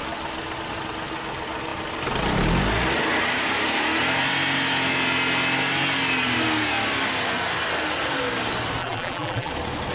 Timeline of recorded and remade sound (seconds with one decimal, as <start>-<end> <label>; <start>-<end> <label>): 0.0-8.8 recorded; 8.8-9.5 remade; 9.5-9.9 recorded